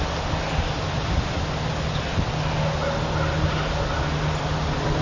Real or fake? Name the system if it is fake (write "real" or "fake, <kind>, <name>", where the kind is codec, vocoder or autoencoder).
real